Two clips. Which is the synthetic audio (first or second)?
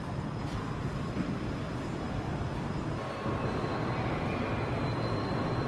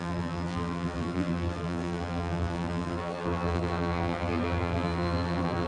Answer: second